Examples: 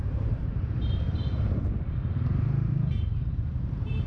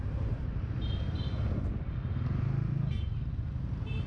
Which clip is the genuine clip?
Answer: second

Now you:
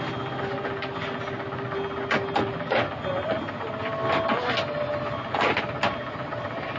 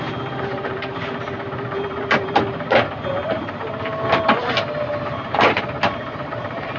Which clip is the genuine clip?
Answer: first